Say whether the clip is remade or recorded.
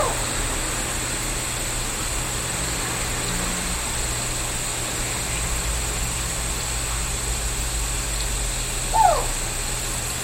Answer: recorded